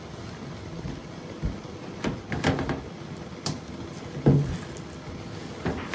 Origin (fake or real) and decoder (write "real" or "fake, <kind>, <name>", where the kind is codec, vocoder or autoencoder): real